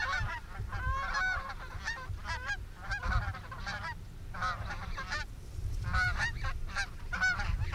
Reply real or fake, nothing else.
fake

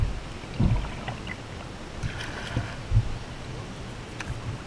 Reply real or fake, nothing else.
real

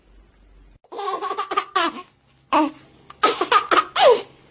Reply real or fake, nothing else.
real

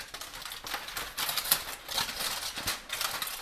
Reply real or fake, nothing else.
real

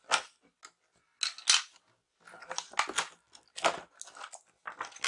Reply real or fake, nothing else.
real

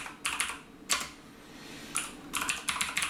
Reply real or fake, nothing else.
real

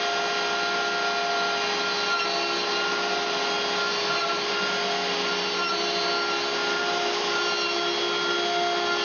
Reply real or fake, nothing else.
real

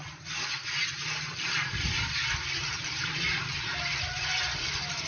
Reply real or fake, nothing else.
fake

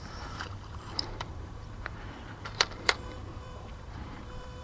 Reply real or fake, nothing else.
fake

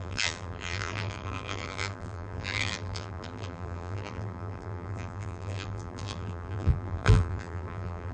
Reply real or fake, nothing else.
fake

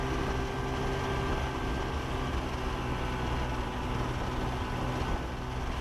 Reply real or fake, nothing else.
real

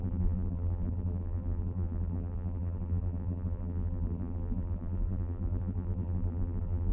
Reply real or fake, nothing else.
fake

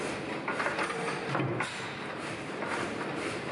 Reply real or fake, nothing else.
fake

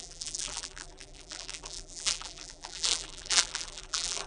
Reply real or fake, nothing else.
fake